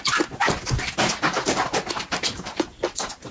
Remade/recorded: recorded